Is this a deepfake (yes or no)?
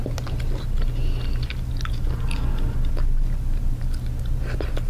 no